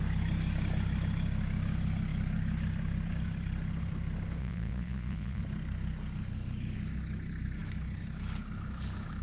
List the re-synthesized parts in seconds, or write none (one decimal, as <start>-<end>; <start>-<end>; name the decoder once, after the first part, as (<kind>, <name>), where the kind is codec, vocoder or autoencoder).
4.4-5.4 (vocoder, Vocos)